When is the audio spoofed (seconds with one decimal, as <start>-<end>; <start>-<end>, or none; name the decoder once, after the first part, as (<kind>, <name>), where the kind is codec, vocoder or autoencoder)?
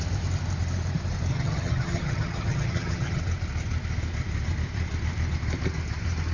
1.3-3.2 (vocoder, HiFi-GAN)